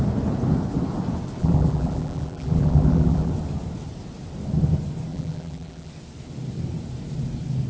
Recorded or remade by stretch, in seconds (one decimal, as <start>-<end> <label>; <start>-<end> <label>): 0.0-1.4 recorded; 1.4-3.3 remade; 3.3-5.1 recorded; 5.1-5.9 remade; 5.9-7.7 recorded

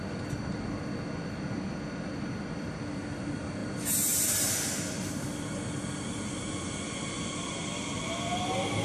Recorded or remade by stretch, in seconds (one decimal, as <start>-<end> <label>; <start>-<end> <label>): 0.0-8.8 recorded

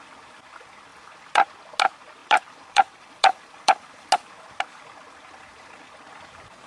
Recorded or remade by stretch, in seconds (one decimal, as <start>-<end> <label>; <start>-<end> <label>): 0.0-0.9 recorded; 0.9-1.5 remade; 1.5-2.2 recorded; 2.2-4.1 remade; 4.1-6.7 recorded

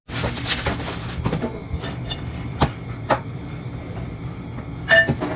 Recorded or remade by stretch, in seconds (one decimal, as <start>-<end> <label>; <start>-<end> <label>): 0.0-1.6 recorded; 1.6-4.8 remade; 4.8-5.4 recorded

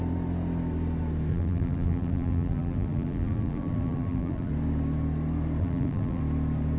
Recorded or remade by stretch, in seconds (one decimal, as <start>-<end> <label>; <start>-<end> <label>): 0.0-1.3 recorded; 1.3-4.5 remade; 4.5-5.6 recorded; 5.6-6.2 remade; 6.2-6.8 recorded

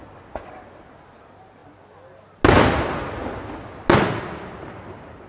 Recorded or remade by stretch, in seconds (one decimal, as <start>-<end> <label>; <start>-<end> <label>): 0.0-5.3 recorded